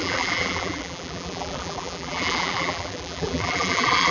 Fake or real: fake